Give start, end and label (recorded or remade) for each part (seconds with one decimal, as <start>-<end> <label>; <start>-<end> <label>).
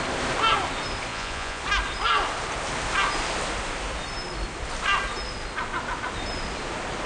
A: 0.0-1.1 recorded; 1.1-1.6 remade; 1.6-7.1 recorded